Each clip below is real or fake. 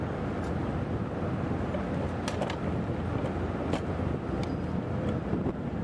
real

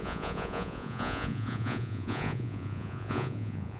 fake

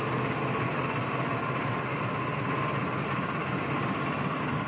real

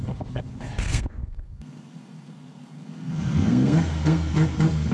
fake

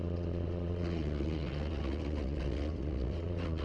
fake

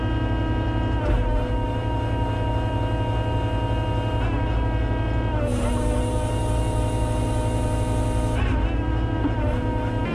real